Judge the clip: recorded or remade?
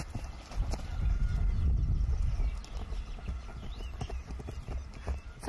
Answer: recorded